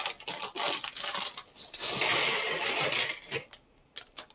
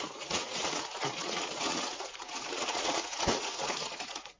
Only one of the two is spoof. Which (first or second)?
second